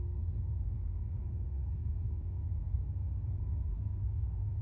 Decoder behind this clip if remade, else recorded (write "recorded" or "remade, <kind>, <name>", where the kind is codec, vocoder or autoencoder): remade, codec, SNAC